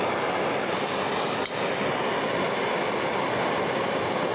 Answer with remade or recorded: recorded